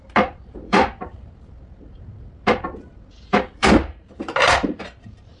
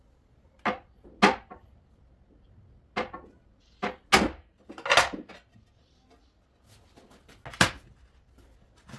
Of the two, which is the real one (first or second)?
second